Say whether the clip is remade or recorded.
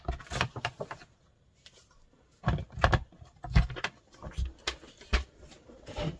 recorded